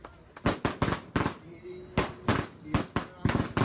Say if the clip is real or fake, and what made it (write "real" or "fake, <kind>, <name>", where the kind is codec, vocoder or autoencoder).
real